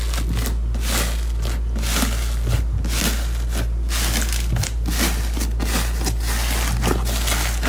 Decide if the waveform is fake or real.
real